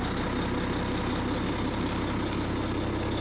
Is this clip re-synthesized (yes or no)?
no